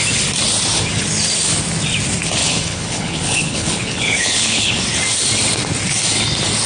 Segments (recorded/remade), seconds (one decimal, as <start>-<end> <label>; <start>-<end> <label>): 0.0-2.4 recorded; 2.4-4.8 remade; 4.8-6.7 recorded